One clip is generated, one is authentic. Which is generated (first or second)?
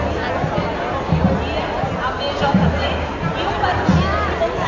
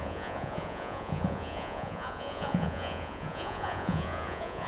second